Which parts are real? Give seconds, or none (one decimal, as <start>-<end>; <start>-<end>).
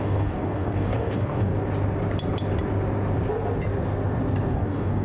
1.5-4.5